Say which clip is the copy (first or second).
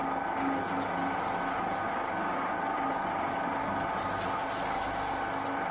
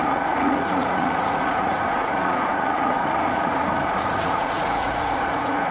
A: second